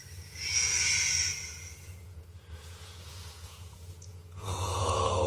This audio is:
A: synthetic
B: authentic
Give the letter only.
A